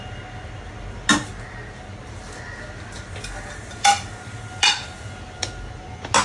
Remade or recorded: recorded